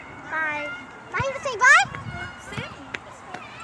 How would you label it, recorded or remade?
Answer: recorded